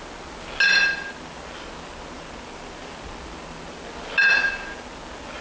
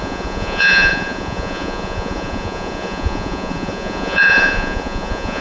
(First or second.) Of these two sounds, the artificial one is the second